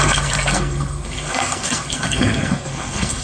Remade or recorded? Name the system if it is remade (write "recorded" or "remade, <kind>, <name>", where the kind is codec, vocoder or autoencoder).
remade, codec, SNAC